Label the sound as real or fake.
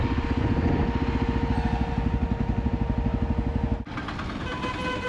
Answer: real